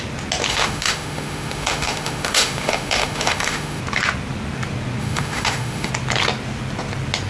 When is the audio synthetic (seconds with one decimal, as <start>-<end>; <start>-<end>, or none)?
0.5-3.8; 5.0-5.9